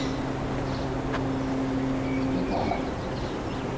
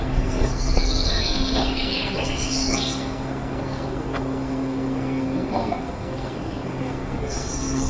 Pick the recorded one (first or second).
first